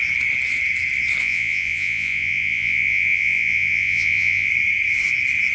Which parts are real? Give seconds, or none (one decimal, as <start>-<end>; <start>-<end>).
0.0-1.2; 4.5-5.5